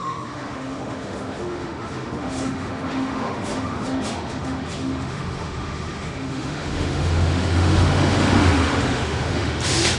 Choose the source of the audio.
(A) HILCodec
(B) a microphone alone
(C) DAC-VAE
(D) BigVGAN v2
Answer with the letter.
C